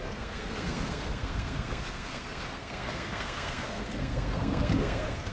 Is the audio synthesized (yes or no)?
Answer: yes